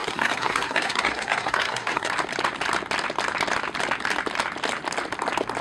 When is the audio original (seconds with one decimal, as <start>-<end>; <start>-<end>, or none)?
2.1-5.6